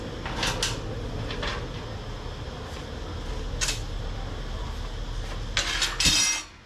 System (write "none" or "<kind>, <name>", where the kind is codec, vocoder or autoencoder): none